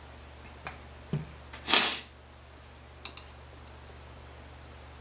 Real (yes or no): yes